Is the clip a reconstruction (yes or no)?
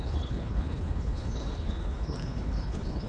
yes